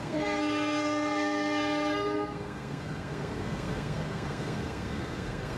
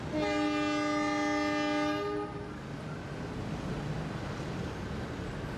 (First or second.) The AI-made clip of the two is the first